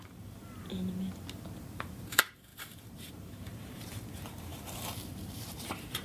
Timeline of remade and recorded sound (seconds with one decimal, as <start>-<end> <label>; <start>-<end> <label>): 0.0-0.4 remade; 0.4-1.6 recorded; 1.6-6.0 remade